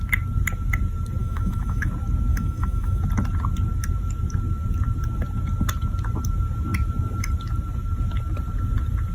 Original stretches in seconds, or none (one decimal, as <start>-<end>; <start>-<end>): 0.0-1.2; 1.9-2.3; 3.0-9.1